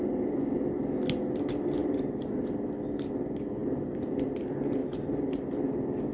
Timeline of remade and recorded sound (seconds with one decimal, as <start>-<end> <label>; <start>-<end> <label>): 0.0-1.8 recorded; 1.8-2.3 remade; 2.3-3.6 recorded; 3.6-4.2 remade; 4.2-4.8 recorded; 4.8-5.6 remade; 5.6-6.1 recorded